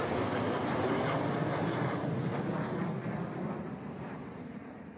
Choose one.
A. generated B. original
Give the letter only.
B